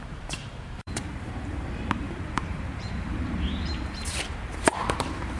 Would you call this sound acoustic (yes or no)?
no